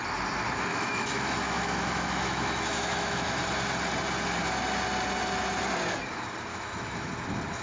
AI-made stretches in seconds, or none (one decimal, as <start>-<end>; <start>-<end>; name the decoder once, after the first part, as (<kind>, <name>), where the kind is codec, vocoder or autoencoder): 0.7-3.4 (autoencoder, DAC-VAE); 6.5-7.1